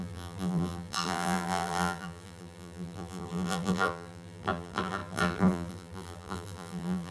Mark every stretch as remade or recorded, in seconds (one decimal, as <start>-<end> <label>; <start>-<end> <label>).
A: 0.0-7.1 remade